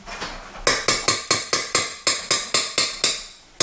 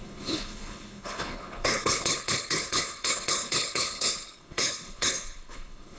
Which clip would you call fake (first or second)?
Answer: second